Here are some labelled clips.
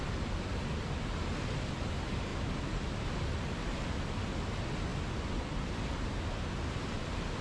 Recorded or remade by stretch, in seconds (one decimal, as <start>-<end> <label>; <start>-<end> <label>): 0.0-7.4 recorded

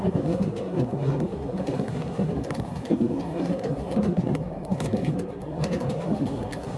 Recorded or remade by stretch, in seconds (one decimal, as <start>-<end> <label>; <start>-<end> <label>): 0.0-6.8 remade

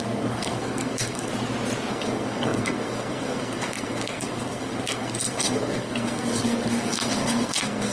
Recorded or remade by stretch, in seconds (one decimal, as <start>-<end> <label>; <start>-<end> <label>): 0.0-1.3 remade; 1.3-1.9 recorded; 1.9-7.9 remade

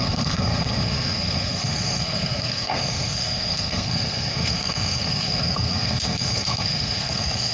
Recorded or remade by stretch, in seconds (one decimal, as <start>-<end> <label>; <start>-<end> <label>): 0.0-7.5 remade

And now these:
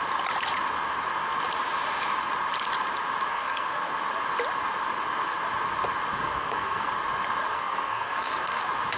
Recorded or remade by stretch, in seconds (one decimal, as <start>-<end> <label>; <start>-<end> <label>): 0.0-3.3 recorded; 3.3-3.9 remade; 3.9-6.2 recorded; 6.2-6.9 remade; 6.9-7.5 recorded; 7.5-8.6 remade; 8.6-9.0 recorded

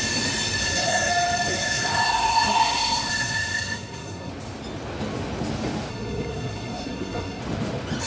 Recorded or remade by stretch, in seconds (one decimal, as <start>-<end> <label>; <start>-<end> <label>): 0.0-0.6 recorded; 0.6-1.1 remade; 1.1-1.5 recorded; 1.5-4.3 remade; 4.3-5.9 recorded; 5.9-7.4 remade; 7.4-8.1 recorded